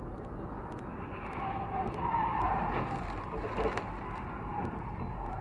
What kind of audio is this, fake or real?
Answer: real